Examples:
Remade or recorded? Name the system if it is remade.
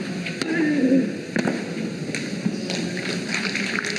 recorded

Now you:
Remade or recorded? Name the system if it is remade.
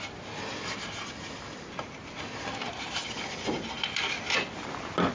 recorded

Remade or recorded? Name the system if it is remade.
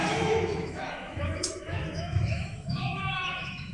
remade, autoencoder, DAC-VAE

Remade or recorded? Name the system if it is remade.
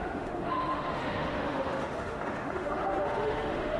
remade, autoencoder, DAC-VAE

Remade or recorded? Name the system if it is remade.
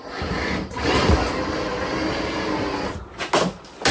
recorded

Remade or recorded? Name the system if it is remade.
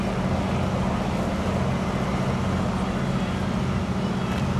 recorded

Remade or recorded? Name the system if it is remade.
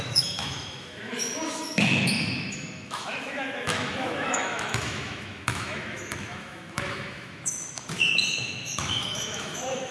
remade, autoencoder, DAC-VAE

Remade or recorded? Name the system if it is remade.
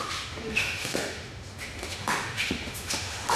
remade, autoencoder, DAC-VAE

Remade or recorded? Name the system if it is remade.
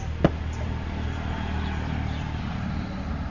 recorded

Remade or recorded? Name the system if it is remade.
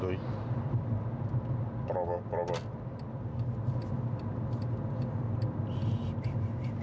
recorded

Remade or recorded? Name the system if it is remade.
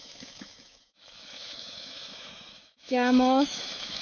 remade, autoencoder, DAC-VAE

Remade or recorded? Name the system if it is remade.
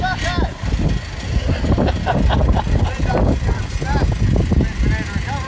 recorded